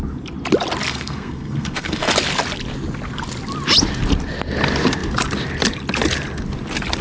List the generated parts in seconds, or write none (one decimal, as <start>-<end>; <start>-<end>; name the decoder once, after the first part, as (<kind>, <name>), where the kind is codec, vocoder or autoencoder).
0.9-2.1 (codec, SNAC)